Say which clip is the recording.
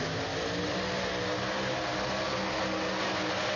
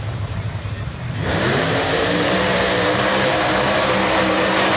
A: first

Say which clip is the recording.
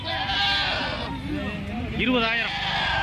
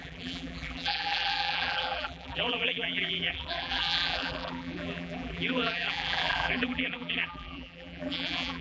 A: first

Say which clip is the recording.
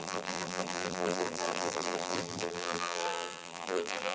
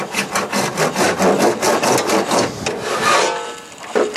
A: second